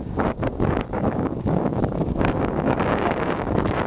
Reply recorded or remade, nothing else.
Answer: remade